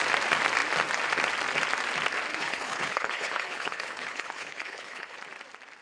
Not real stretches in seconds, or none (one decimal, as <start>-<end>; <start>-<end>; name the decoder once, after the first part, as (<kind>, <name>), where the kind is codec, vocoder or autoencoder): 2.3-5.2 (codec, HILCodec)